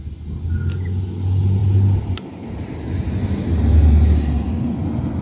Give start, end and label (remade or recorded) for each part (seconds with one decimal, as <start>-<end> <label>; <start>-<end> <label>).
0.0-5.2 recorded